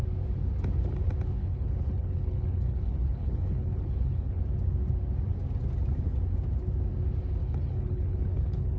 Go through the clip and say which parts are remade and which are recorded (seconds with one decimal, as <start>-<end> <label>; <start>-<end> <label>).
0.0-1.4 recorded; 1.4-4.4 remade; 4.4-7.4 recorded; 7.4-8.8 remade